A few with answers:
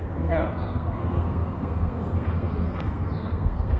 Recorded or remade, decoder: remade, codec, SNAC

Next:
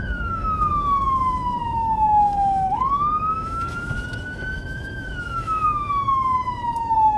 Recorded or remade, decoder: remade, autoencoder, DAC-VAE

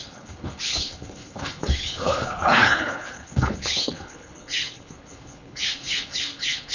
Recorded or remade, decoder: remade, codec, HILCodec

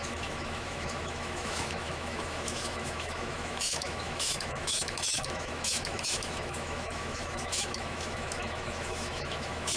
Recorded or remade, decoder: remade, autoencoder, DAC-VAE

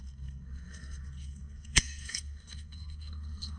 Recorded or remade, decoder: remade, codec, SNAC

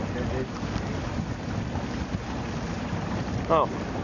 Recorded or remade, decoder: recorded